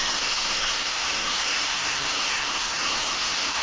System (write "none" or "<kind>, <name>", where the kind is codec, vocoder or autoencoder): codec, SNAC